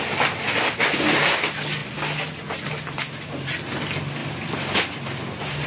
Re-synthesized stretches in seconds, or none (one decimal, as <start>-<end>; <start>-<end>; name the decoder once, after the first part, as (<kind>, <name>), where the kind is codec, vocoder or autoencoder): 4.2-4.8 (vocoder, BigVGAN v2)